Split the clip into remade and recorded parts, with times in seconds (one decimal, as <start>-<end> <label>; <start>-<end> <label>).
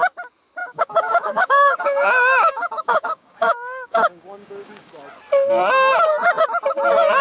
0.0-0.6 recorded; 0.6-4.9 remade; 4.9-7.2 recorded